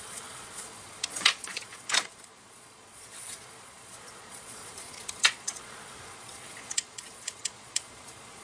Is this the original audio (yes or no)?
no